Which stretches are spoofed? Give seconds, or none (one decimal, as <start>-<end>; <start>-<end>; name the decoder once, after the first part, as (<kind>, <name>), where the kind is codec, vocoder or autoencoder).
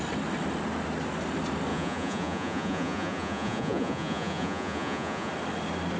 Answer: 1.7-5.3 (vocoder, Vocos)